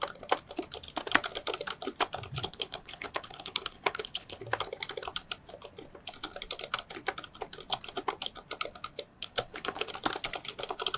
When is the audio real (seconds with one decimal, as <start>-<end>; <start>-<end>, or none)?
0.0-2.4; 4.4-9.1; 9.9-11.0